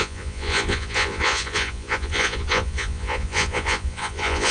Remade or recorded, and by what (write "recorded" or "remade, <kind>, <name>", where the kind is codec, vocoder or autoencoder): remade, vocoder, Vocos